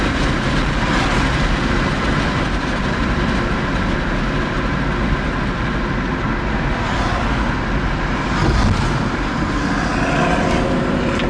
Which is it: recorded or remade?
recorded